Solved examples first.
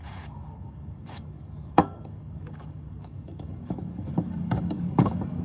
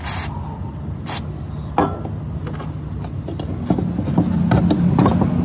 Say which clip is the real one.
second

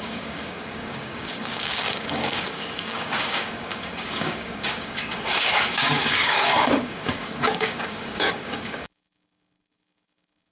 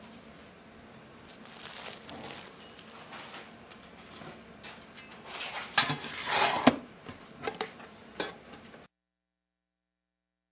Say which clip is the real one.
second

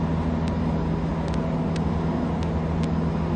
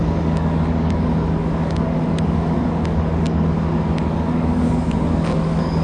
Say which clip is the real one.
first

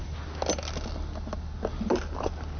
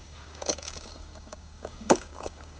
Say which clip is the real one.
first